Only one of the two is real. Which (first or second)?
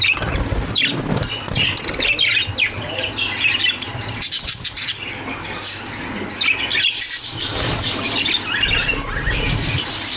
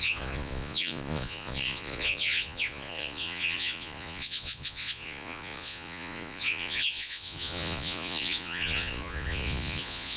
first